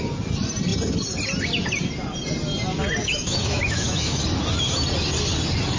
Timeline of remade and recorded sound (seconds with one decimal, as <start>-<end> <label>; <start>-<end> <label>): 0.0-3.0 recorded; 3.0-4.2 remade; 4.2-5.8 recorded